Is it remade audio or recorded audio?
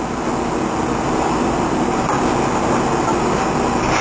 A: recorded